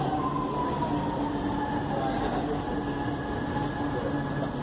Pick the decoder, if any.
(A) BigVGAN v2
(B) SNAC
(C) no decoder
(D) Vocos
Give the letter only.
C